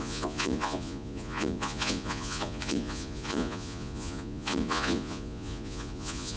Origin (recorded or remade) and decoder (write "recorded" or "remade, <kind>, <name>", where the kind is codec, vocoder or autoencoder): remade, vocoder, Vocos